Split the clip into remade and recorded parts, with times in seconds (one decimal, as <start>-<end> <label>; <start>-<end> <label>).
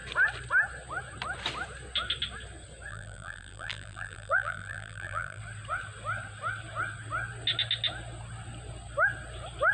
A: 0.0-2.9 recorded; 2.9-5.4 remade; 5.4-9.7 recorded